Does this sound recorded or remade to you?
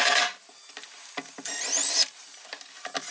recorded